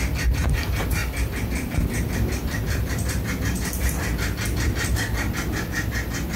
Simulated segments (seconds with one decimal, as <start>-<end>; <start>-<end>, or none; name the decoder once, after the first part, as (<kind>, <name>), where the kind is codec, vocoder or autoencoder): 0.0-6.4 (vocoder, BigVGAN v2)